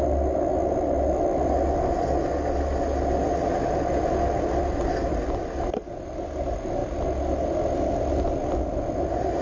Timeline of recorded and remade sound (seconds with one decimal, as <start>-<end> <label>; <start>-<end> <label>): 0.0-9.4 recorded